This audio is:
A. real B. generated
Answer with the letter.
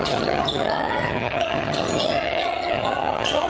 B